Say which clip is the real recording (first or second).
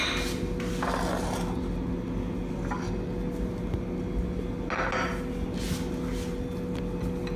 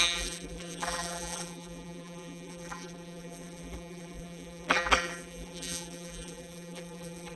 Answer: first